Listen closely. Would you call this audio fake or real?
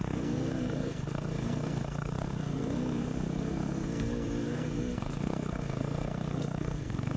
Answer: fake